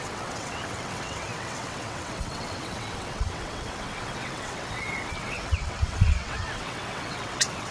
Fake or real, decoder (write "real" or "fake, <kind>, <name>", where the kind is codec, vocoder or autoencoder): fake, vocoder, WaveNeXt